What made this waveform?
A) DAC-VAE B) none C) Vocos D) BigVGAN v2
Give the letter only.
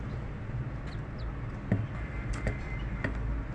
D